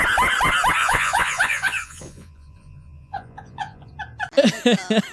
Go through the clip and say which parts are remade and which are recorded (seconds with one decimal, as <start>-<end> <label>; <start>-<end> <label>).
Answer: 0.0-0.8 recorded; 0.8-3.9 remade; 3.9-5.1 recorded